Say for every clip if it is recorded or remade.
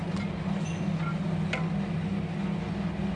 recorded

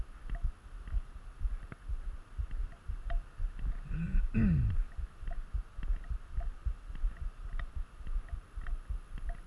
recorded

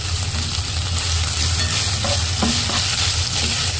recorded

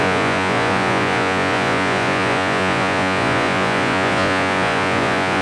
remade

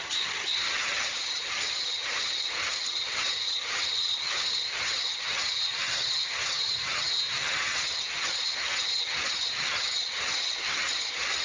remade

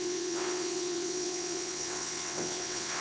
remade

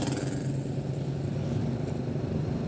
recorded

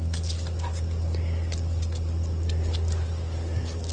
recorded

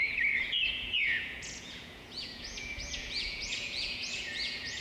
remade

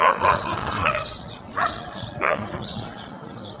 remade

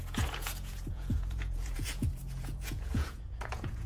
remade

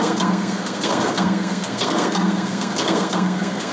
remade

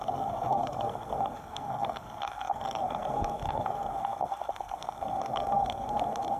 remade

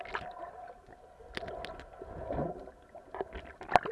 recorded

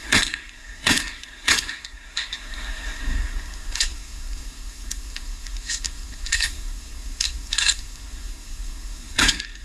remade